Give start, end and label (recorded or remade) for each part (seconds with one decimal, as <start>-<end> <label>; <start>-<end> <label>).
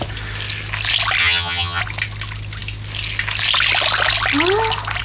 0.0-1.2 recorded; 1.2-1.8 remade; 1.8-5.0 recorded